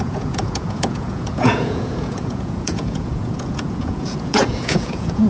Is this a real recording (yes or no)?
no